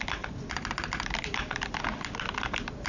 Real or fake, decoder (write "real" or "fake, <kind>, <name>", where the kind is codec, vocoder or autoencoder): real